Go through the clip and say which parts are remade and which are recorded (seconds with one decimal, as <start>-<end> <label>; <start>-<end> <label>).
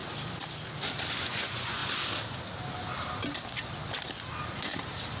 0.0-1.2 recorded; 1.2-1.8 remade; 1.8-5.2 recorded